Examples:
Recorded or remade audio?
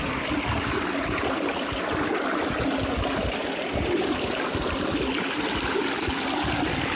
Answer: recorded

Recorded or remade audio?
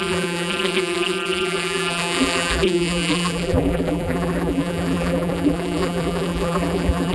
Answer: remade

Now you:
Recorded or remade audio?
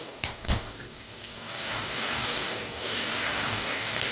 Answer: remade